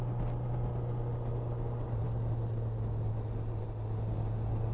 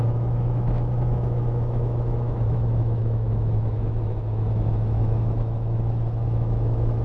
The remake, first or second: second